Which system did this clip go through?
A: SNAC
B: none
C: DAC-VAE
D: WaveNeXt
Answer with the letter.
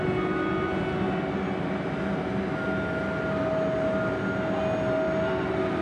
B